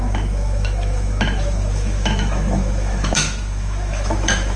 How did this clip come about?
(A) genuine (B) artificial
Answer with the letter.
B